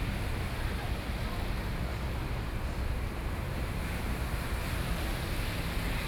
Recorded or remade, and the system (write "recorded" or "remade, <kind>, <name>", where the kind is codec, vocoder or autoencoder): recorded